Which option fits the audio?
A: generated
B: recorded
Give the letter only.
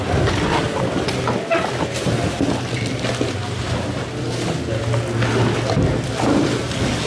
B